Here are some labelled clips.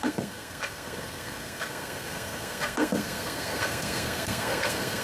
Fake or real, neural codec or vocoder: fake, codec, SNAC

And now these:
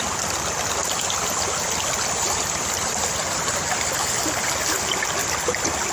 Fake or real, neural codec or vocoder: real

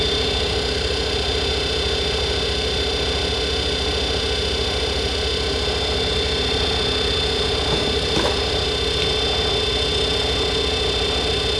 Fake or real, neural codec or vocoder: real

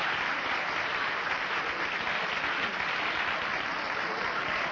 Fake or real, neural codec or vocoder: real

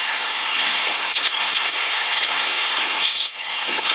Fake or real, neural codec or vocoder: fake, codec, SNAC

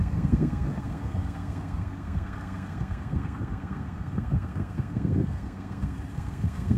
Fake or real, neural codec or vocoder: fake, codec, SNAC